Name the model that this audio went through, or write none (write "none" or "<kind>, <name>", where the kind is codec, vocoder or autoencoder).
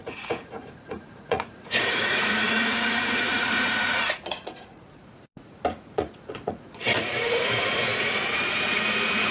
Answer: vocoder, Vocos